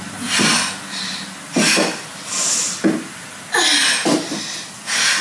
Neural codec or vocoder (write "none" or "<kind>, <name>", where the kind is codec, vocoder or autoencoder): none